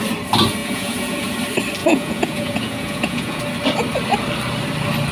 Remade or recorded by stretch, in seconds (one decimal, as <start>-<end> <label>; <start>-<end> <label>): 0.0-0.6 recorded; 0.6-1.3 remade; 1.3-1.8 recorded; 1.8-3.4 remade; 3.4-5.1 recorded